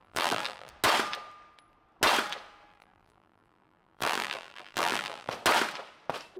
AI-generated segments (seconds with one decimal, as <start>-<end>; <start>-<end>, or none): 0.0-0.7; 2.7-5.3